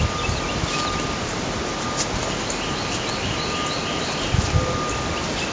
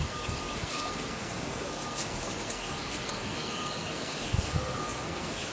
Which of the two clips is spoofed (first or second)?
second